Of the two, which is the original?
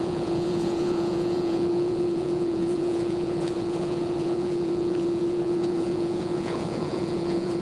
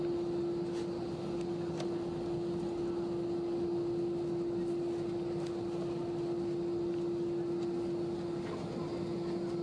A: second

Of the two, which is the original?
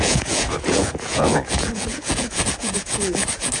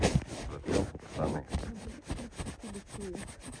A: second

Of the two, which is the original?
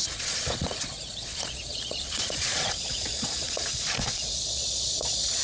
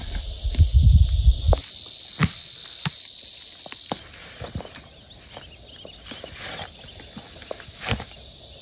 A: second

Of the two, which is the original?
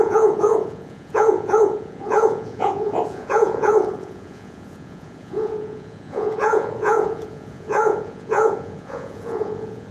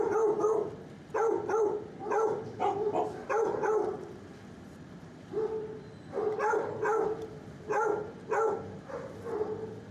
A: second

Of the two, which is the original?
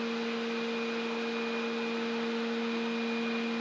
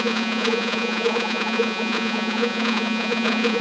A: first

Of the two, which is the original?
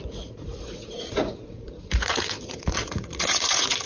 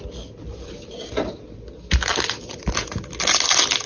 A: second